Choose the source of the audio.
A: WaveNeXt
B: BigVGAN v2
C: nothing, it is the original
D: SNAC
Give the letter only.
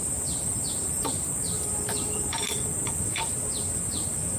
C